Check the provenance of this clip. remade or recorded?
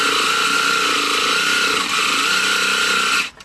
recorded